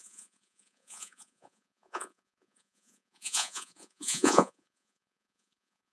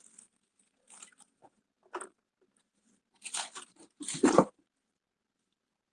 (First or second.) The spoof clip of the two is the first